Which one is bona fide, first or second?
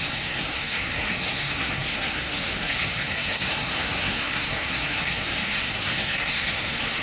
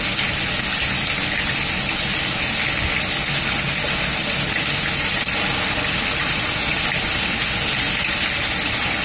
second